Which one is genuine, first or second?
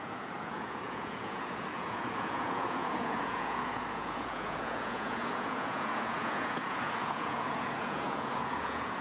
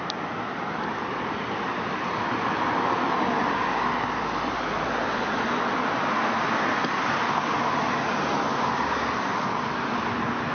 second